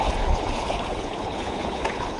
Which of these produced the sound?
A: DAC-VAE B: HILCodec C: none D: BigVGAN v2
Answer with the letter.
B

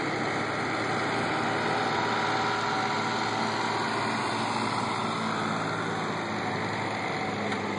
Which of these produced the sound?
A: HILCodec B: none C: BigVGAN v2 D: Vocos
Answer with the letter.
B